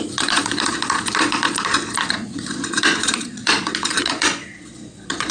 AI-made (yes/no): yes